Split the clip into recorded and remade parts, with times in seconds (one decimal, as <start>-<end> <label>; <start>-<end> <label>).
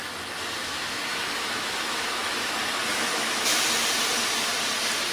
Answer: 0.0-0.6 recorded; 0.6-2.5 remade; 2.5-2.9 recorded; 2.9-3.6 remade; 3.6-5.1 recorded